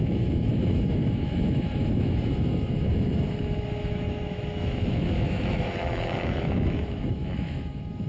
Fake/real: fake